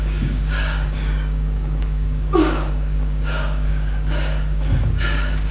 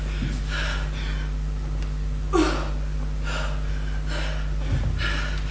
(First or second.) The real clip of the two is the second